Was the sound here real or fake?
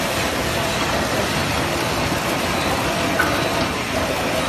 real